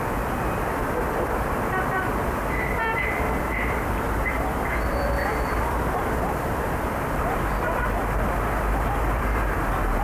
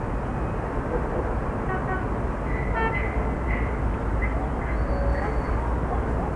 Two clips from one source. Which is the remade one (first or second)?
first